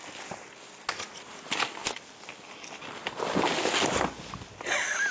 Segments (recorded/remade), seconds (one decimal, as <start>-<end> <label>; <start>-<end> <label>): 0.0-5.1 recorded